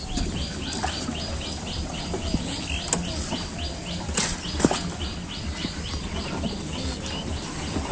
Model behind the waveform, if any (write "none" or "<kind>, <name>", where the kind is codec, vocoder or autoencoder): none